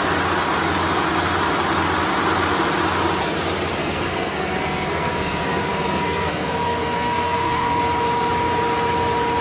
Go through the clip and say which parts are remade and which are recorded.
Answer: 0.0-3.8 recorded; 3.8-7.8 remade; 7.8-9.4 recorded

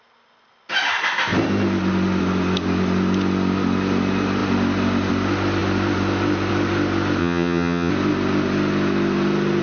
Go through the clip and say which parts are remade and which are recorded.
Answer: 0.0-7.2 recorded; 7.2-7.9 remade; 7.9-9.6 recorded

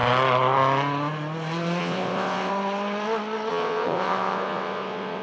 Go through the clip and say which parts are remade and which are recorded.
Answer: 0.0-1.8 recorded; 1.8-2.5 remade; 2.5-3.5 recorded; 3.5-5.2 remade

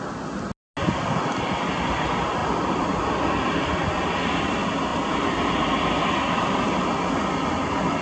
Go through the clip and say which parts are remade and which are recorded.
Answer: 0.0-8.0 recorded

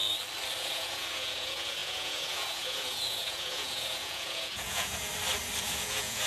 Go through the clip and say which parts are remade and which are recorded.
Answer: 0.0-0.6 recorded; 0.6-5.1 remade; 5.1-5.6 recorded; 5.6-6.3 remade

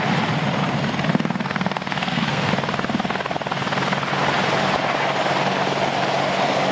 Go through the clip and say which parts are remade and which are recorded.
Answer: 0.0-1.1 recorded; 1.1-2.5 remade; 2.5-6.7 recorded

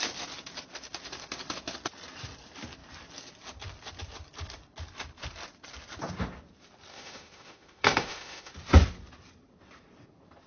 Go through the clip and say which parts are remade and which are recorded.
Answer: 0.0-6.9 recorded; 6.9-8.5 remade; 8.5-10.5 recorded